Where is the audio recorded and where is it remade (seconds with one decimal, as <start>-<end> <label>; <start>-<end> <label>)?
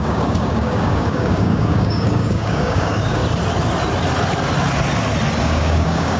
0.0-3.2 remade; 3.2-5.4 recorded; 5.4-6.2 remade